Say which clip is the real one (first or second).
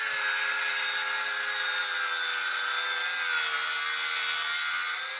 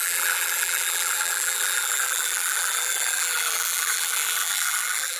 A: first